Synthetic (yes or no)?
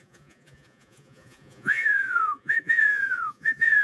yes